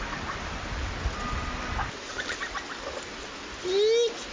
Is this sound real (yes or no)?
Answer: yes